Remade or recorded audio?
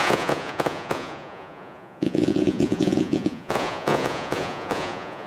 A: remade